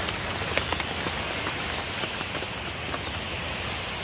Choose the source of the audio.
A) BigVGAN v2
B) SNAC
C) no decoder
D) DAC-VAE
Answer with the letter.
C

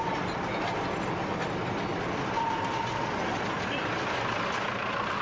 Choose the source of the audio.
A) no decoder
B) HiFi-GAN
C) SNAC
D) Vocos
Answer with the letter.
A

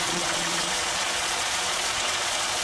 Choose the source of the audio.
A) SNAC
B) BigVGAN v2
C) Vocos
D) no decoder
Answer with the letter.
C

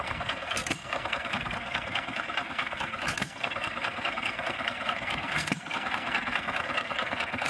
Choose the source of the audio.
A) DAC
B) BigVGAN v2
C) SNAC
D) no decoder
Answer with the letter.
C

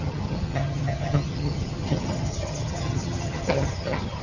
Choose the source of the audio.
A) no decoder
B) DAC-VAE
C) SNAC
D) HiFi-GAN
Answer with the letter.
D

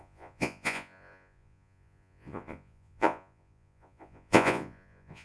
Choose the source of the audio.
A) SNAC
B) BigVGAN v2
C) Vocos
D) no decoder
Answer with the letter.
C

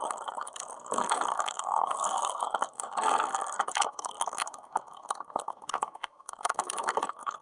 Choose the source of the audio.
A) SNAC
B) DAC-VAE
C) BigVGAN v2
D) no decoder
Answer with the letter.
A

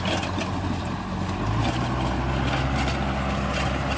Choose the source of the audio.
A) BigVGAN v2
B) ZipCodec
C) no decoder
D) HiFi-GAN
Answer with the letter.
C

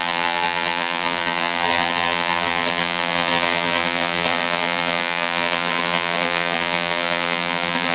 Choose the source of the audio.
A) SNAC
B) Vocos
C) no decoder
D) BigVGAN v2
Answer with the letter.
D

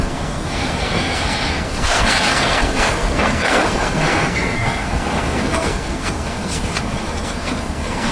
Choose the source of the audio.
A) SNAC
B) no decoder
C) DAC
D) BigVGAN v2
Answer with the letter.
A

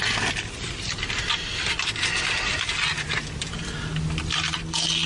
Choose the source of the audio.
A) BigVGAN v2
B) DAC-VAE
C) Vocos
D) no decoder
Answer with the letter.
D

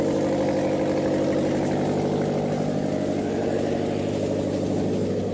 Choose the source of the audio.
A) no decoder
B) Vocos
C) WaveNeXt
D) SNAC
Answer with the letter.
A